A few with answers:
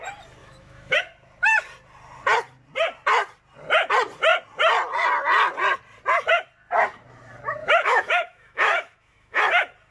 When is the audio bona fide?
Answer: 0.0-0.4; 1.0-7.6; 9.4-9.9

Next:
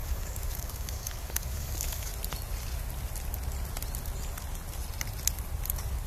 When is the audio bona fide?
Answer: 2.1-6.1

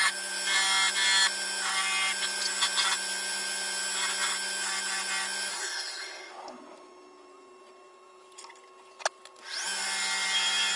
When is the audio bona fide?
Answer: 0.0-5.5; 6.3-10.8

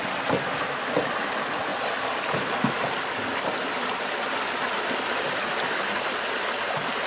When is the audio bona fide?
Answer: 0.0-7.1

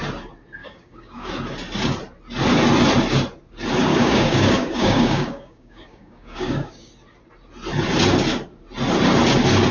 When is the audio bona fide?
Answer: 0.0-0.6; 1.3-3.9; 6.9-9.7

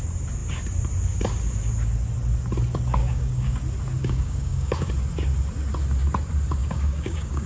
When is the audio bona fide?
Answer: 0.0-3.0; 3.6-4.0; 4.9-6.6

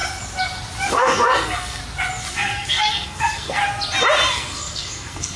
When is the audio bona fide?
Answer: 0.0-0.9; 1.8-2.3; 3.6-4.3